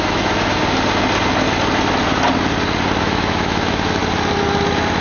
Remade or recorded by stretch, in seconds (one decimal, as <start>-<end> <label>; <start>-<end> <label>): 0.0-0.6 remade; 0.6-3.0 recorded; 3.0-4.0 remade; 4.0-5.0 recorded